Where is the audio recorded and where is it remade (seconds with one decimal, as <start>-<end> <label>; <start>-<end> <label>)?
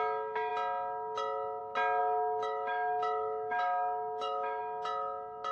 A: 0.0-2.0 recorded; 2.0-4.6 remade; 4.6-5.5 recorded